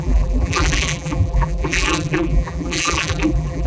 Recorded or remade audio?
remade